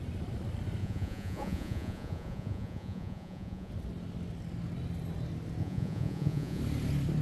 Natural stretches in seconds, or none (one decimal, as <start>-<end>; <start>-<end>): 0.0-0.8; 3.7-5.6; 6.6-7.2